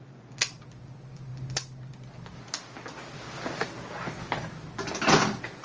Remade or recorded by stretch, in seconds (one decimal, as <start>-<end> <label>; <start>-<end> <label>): 0.0-5.6 recorded